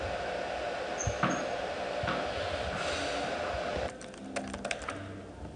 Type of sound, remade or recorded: recorded